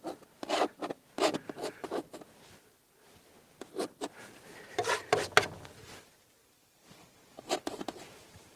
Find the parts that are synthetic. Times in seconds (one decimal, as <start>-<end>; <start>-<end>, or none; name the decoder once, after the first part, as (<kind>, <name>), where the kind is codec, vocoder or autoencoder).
6.6-8.6 (vocoder, BigVGAN v2)